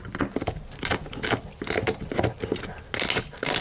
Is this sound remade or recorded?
recorded